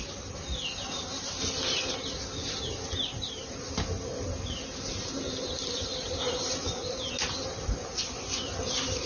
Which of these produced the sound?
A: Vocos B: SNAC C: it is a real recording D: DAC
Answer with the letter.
C